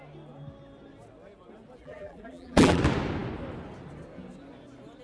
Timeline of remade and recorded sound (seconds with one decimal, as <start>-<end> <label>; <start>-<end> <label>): 0.0-1.8 recorded; 1.8-2.8 remade; 2.8-5.0 recorded